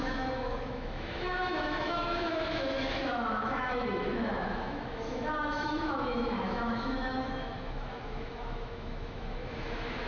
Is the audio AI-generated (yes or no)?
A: yes